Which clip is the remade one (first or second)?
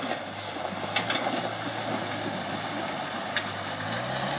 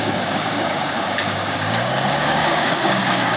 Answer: second